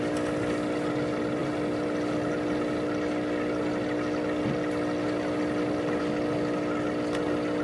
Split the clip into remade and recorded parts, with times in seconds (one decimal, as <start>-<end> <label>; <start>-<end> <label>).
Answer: 0.0-7.6 recorded